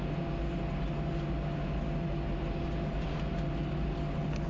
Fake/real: real